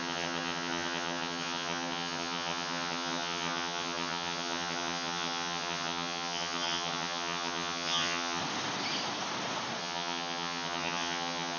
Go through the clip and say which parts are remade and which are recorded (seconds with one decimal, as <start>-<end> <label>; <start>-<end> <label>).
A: 0.0-8.4 remade; 8.4-9.8 recorded; 9.8-11.6 remade